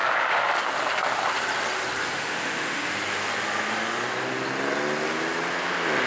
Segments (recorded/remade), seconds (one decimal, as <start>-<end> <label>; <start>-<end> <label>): 0.0-2.1 recorded; 2.1-2.9 remade; 2.9-6.1 recorded